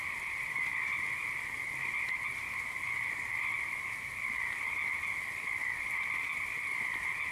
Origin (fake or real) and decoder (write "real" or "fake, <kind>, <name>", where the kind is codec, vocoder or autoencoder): real